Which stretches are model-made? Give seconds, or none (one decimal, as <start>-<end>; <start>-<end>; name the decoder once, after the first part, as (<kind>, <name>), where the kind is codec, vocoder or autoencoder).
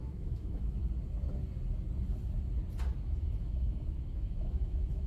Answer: 0.0-0.8 (autoencoder, DAC-VAE); 3.0-5.1